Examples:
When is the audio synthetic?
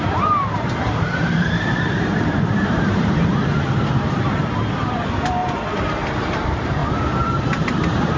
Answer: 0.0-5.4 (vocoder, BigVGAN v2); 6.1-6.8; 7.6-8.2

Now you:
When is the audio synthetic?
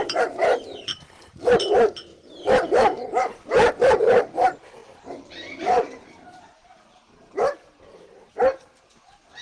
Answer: 0.9-1.5 (vocoder, BigVGAN v2); 2.1-4.2; 4.8-8.3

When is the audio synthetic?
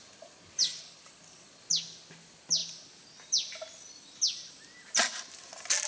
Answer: 0.7-1.3 (vocoder, BigVGAN v2)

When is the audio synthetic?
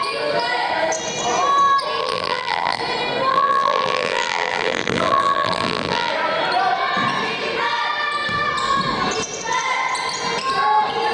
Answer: 2.0-2.8 (vocoder, BigVGAN v2); 3.3-6.1